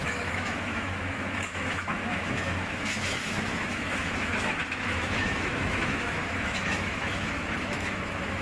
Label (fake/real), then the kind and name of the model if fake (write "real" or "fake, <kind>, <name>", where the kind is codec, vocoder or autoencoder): fake, autoencoder, DAC-VAE